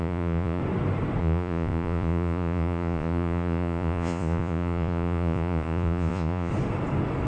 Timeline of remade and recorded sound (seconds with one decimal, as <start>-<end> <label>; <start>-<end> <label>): 0.0-0.6 remade; 0.6-1.2 recorded; 1.2-6.5 remade; 6.5-7.3 recorded